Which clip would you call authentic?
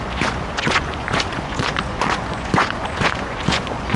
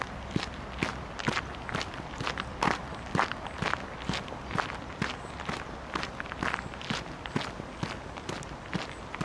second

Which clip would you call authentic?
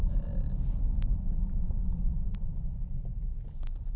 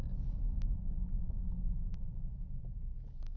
second